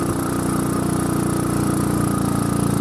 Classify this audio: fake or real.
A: real